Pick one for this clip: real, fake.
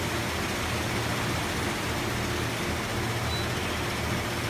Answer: real